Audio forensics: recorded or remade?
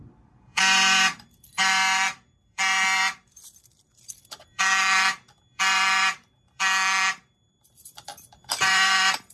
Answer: remade